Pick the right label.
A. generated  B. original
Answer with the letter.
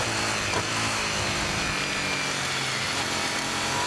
B